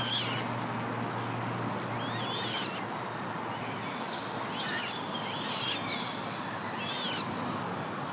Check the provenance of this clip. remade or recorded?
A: recorded